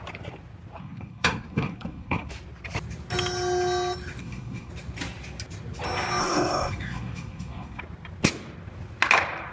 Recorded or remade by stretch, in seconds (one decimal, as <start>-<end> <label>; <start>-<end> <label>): 0.0-0.8 recorded; 0.8-2.3 remade; 2.3-4.2 recorded; 4.2-4.7 remade; 4.7-6.2 recorded; 6.2-7.8 remade; 7.8-9.5 recorded